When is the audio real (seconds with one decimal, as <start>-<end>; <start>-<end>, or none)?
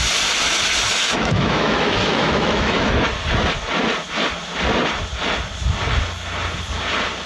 0.0-1.0; 2.9-7.3